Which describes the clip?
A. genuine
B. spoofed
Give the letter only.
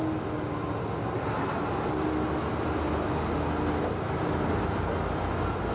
A